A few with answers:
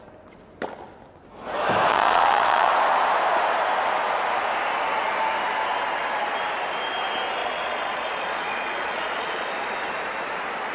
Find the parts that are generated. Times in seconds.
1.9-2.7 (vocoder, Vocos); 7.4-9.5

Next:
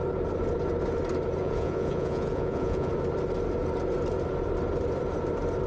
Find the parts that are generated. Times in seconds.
1.4-2.9 (vocoder, Vocos)

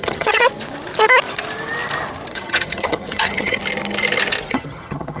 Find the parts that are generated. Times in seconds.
0.0-0.4 (vocoder, HiFi-GAN); 2.3-3.6; 4.5-5.2

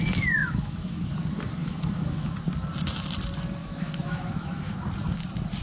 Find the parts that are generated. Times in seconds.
0.4-1.1 (autoencoder, DAC-VAE); 1.6-2.4; 3.6-4.7

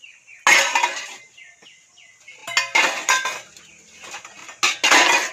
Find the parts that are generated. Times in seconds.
none